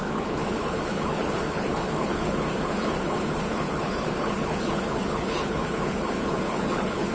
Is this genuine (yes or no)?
no